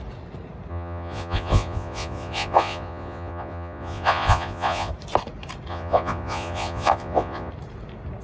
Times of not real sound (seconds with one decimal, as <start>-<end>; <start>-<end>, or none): 0.7-4.9; 5.7-7.5